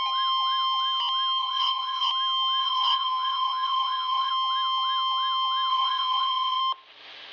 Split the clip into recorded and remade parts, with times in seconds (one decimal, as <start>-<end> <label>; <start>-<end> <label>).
0.0-1.4 recorded; 1.4-2.1 remade; 2.1-2.6 recorded; 2.6-4.3 remade; 4.3-5.7 recorded; 5.7-6.6 remade; 6.6-7.3 recorded